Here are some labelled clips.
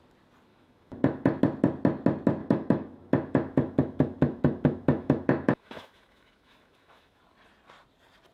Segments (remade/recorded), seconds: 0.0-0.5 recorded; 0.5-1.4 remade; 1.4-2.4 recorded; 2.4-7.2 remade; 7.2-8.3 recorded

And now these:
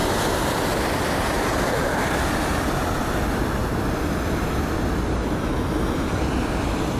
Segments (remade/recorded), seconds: 0.0-7.0 recorded

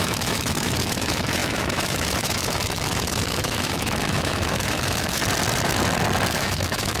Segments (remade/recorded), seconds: 0.0-5.2 remade; 5.2-6.3 recorded; 6.3-7.0 remade

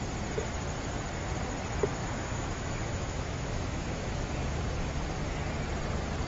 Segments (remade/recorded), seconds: 0.0-2.0 recorded; 2.0-4.7 remade; 4.7-6.3 recorded

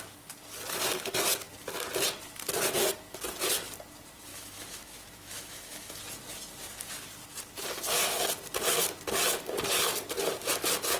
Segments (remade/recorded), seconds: 0.0-4.3 recorded; 4.3-6.0 remade; 6.0-11.0 recorded

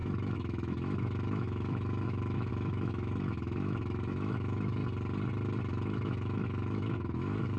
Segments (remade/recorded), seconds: 0.0-4.8 remade; 4.8-5.7 recorded; 5.7-7.6 remade

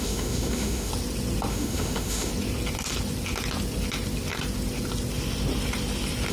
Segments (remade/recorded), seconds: 0.0-0.9 remade; 0.9-1.5 recorded; 1.5-2.3 remade; 2.3-6.3 recorded